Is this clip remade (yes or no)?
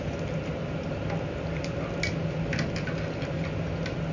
no